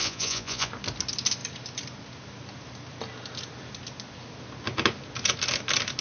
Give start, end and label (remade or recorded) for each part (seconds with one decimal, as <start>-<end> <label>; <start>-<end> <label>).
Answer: 0.0-0.7 remade; 0.7-6.0 recorded